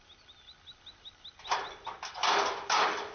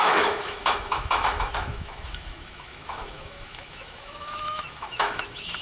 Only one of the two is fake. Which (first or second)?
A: second